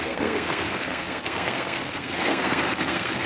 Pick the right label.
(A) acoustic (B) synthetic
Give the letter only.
B